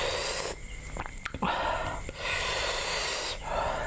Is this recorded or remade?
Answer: remade